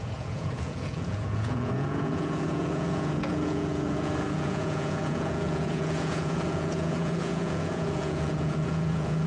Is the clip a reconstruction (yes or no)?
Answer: yes